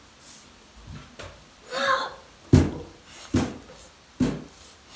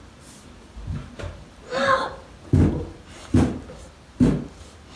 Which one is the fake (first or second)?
second